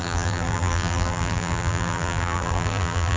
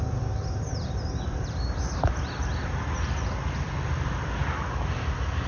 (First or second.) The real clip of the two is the second